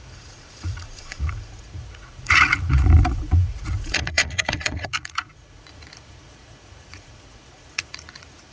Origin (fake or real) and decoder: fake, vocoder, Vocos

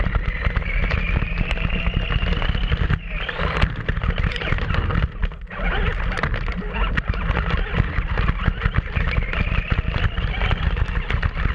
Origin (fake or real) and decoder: real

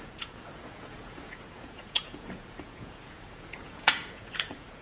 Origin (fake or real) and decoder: fake, vocoder, Vocos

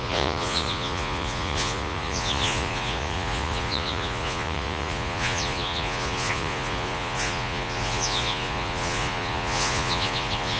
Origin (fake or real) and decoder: fake, vocoder, Vocos